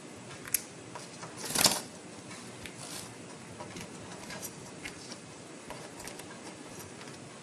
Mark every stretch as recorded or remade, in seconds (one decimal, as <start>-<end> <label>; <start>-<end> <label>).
0.0-1.4 recorded; 1.4-1.9 remade; 1.9-4.1 recorded; 4.1-5.9 remade; 5.9-7.4 recorded